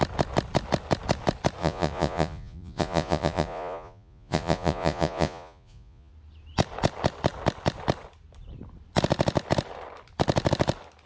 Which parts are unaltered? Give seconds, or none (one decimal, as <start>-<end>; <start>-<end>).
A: 0.0-1.6; 6.1-11.1